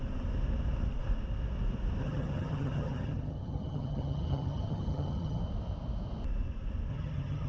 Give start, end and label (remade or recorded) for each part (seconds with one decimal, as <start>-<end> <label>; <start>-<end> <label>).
0.0-2.0 recorded; 2.0-5.4 remade; 5.4-6.9 recorded; 6.9-7.5 remade